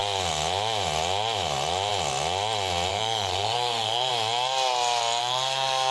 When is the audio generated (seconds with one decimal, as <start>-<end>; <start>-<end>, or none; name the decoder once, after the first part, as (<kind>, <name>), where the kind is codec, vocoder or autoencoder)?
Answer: 2.9-4.1 (codec, SNAC); 5.2-5.9